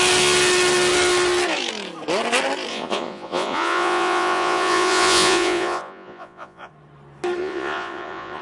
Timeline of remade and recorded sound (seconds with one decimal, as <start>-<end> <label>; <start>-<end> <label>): 0.0-2.7 recorded; 2.7-6.7 remade; 6.7-7.4 recorded; 7.4-8.4 remade